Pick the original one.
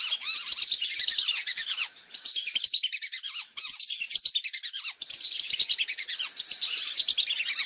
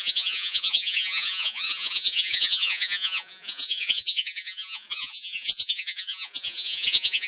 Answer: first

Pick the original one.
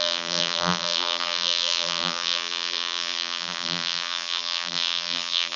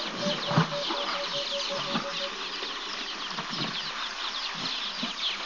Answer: second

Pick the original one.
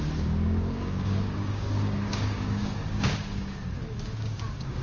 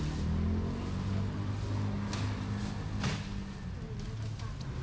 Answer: second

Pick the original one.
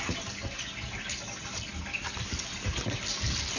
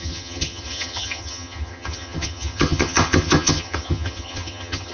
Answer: first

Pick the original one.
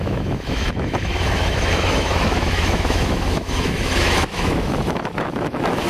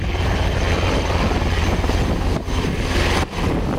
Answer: second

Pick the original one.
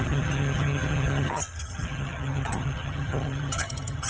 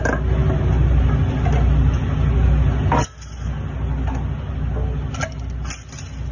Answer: second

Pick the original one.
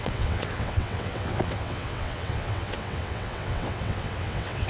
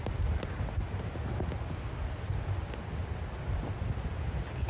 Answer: second